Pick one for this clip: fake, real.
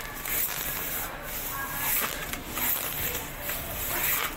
real